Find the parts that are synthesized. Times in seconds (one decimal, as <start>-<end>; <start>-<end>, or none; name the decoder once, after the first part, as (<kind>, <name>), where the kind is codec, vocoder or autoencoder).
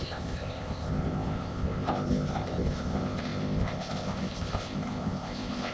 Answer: 0.0-5.7 (codec, ZipCodec)